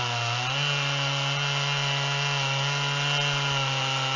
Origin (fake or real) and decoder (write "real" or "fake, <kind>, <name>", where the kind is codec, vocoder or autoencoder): real